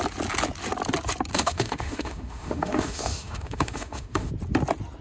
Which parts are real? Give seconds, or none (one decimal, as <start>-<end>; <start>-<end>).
0.0-1.3; 4.3-5.0